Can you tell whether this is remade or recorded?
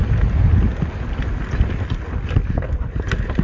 recorded